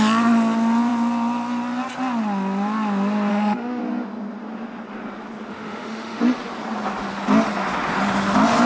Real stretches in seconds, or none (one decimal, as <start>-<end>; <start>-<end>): 0.0-3.3; 3.8-5.5; 6.2-8.7